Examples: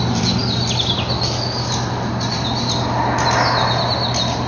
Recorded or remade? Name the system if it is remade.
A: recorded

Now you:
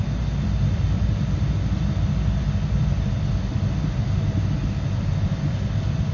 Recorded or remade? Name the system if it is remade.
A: recorded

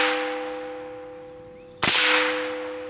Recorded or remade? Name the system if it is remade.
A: recorded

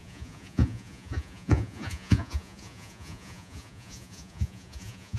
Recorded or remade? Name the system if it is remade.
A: remade, vocoder, Vocos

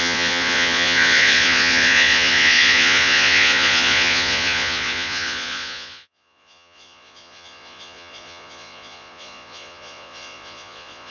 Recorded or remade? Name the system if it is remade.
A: remade, vocoder, Vocos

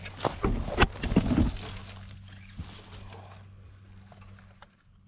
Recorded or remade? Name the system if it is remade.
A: recorded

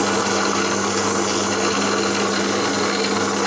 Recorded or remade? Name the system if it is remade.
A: recorded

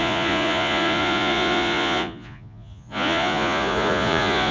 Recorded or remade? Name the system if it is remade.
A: remade, vocoder, Vocos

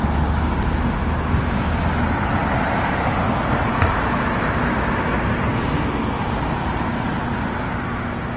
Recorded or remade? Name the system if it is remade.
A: recorded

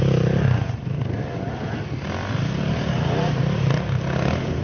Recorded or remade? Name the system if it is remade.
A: recorded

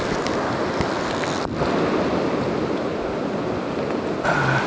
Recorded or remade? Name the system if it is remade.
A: recorded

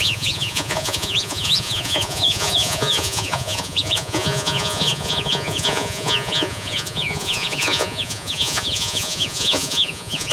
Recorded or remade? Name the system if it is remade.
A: remade, vocoder, Vocos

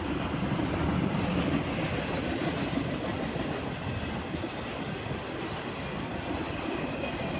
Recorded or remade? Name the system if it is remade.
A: recorded